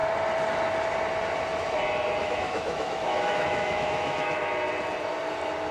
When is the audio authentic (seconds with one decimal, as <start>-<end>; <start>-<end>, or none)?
0.0-2.2; 4.4-5.7